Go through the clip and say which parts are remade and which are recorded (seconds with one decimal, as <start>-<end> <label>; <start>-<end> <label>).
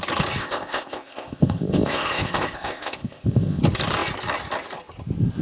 0.0-0.4 recorded; 0.4-3.6 remade; 3.6-5.4 recorded